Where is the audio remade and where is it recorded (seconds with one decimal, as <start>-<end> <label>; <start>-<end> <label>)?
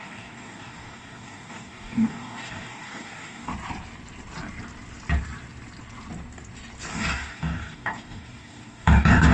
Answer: 0.0-3.5 remade; 3.5-6.9 recorded; 6.9-9.3 remade